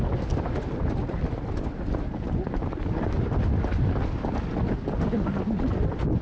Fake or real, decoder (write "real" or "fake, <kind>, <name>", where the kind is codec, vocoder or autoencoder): real